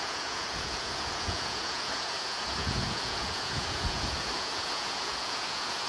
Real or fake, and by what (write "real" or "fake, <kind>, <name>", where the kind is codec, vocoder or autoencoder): fake, vocoder, Vocos